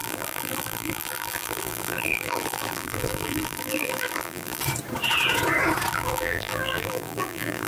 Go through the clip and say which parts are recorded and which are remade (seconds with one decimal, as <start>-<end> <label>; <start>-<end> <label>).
0.0-4.6 remade; 4.6-5.9 recorded; 5.9-7.7 remade